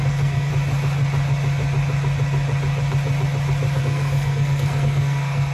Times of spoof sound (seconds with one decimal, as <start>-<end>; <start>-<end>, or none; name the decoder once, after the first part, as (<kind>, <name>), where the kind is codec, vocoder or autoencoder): 0.0-0.5 (codec, SNAC); 3.8-5.5